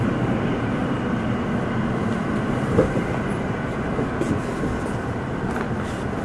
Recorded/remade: recorded